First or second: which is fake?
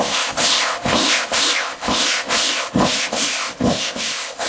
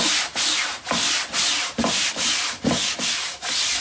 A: first